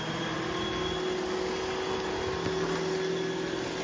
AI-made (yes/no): no